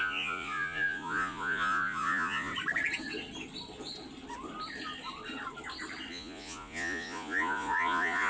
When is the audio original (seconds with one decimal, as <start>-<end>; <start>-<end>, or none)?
2.5-6.1